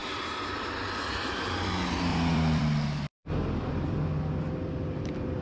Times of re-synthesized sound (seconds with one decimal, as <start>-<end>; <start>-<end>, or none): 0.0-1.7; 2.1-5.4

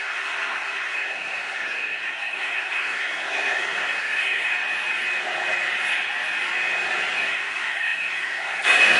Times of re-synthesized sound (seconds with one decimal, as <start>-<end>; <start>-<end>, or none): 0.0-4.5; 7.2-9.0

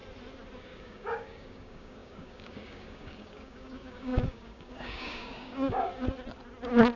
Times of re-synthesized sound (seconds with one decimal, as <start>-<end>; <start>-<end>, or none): 0.7-5.9

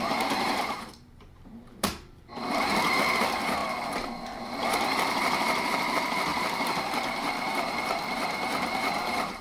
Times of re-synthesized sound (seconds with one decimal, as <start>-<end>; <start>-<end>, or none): 0.0-3.6; 4.8-9.4

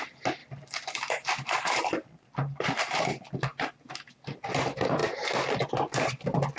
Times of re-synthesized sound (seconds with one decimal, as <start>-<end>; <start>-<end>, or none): 0.4-2.3; 5.0-5.7